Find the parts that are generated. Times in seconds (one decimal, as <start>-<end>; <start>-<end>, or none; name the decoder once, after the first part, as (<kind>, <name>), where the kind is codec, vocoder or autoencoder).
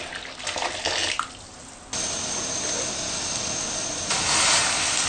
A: none